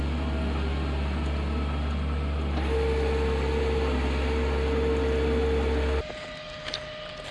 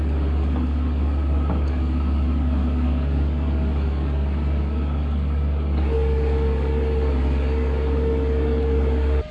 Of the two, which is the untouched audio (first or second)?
first